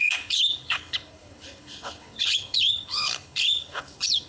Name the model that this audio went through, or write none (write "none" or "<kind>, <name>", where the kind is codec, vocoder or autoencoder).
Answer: codec, HILCodec